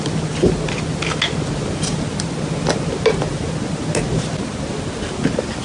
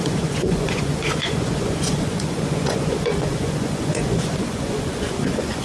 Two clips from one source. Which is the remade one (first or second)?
second